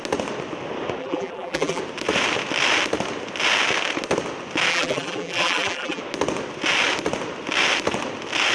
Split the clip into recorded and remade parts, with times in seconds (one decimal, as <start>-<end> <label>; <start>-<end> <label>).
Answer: 0.0-1.0 recorded; 1.0-1.8 remade; 1.8-4.7 recorded; 4.7-6.0 remade; 6.0-8.5 recorded